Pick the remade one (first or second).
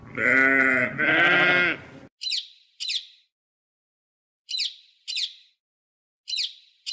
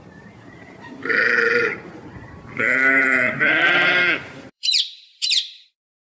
second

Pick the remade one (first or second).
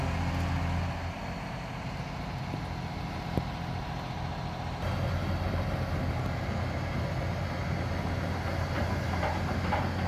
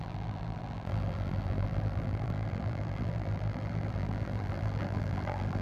second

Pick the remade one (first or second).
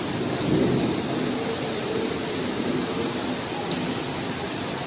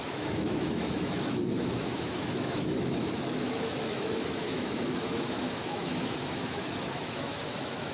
second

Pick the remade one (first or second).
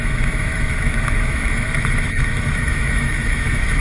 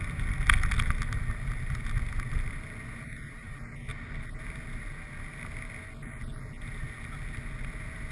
first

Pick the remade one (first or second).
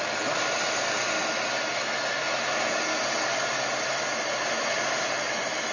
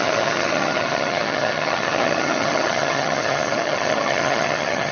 second